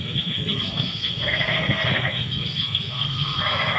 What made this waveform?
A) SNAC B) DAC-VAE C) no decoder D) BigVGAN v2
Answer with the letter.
A